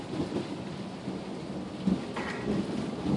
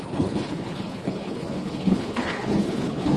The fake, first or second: second